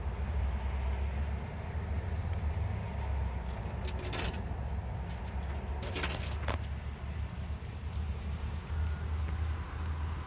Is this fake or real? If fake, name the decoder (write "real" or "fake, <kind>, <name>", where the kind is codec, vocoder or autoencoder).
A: real